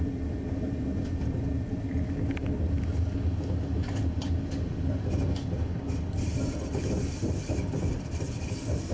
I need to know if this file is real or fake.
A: real